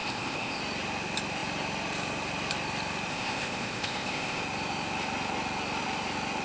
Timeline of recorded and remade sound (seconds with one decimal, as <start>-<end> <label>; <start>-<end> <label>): 0.0-0.6 remade; 0.6-3.1 recorded; 3.1-4.4 remade; 4.4-6.4 recorded